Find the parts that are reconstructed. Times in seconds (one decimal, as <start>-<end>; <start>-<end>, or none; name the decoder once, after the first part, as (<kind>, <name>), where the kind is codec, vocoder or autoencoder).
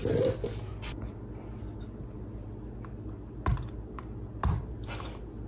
none